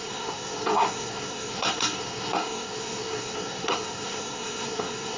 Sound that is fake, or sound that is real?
fake